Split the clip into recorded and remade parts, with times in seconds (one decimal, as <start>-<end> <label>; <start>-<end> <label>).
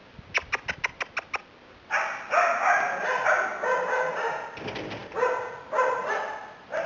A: 0.0-6.9 recorded